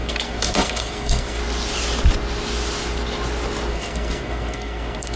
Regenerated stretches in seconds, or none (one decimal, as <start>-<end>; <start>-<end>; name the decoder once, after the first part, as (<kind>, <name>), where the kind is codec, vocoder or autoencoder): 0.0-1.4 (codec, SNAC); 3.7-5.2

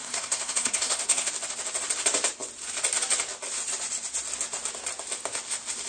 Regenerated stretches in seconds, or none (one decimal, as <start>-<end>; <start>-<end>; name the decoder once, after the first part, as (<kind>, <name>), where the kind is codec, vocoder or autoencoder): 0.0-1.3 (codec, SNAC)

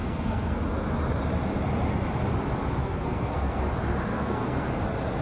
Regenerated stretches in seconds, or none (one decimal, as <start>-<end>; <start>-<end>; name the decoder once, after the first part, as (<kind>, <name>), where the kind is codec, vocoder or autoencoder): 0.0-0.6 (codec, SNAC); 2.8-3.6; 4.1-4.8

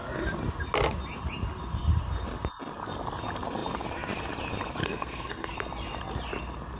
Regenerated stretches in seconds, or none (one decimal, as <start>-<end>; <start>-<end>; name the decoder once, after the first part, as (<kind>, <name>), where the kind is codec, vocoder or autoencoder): 4.8-5.5 (codec, SNAC)

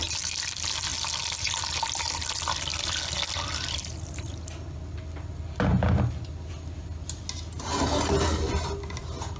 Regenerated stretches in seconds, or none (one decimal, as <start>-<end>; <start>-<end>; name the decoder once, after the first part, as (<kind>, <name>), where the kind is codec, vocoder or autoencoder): none